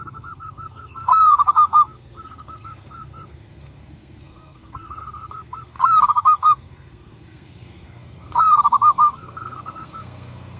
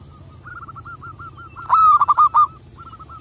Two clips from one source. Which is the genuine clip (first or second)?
second